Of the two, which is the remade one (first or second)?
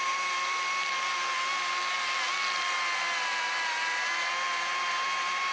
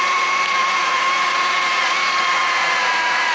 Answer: second